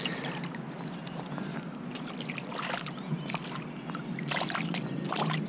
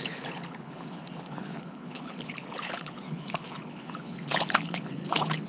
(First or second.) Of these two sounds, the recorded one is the first